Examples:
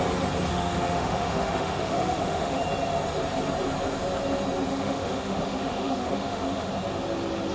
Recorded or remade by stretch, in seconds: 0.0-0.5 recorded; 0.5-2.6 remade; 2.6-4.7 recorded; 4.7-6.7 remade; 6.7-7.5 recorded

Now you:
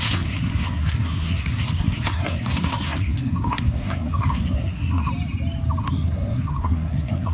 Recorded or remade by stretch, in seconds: 0.0-5.1 remade; 5.1-5.8 recorded; 5.8-7.3 remade

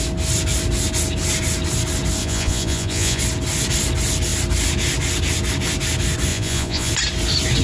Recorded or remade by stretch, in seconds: 0.0-2.2 recorded; 2.2-3.2 remade; 3.2-6.3 recorded; 6.3-6.9 remade; 6.9-7.6 recorded

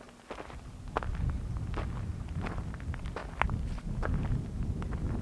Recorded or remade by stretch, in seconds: 0.0-5.2 recorded

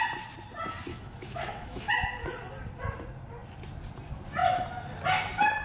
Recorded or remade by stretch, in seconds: 0.0-0.9 recorded; 0.9-1.9 remade; 1.9-5.6 recorded

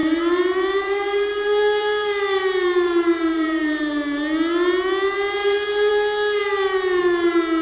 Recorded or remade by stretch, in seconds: 0.0-3.9 remade; 3.9-5.4 recorded; 5.4-5.9 remade; 5.9-6.4 recorded; 6.4-7.0 remade; 7.0-7.6 recorded

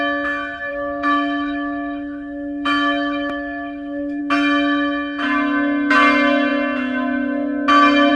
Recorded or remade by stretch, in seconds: 0.0-0.7 recorded; 0.7-4.2 remade; 4.2-8.1 recorded